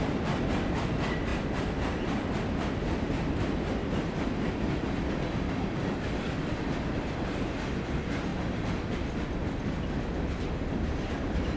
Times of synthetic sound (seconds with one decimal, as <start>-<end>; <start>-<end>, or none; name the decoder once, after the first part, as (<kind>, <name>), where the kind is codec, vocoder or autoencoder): none